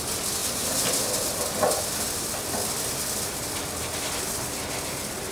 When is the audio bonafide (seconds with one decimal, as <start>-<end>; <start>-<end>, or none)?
0.0-5.3